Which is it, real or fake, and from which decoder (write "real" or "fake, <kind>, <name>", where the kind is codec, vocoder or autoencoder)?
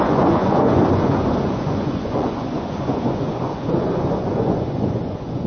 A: fake, vocoder, Vocos